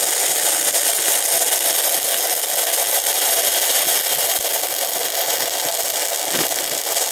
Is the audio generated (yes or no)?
no